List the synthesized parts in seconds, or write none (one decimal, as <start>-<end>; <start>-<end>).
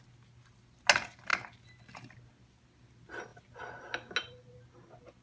none